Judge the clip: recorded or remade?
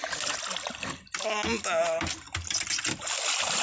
recorded